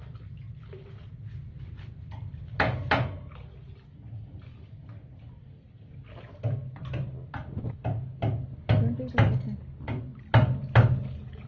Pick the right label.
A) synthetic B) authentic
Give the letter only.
B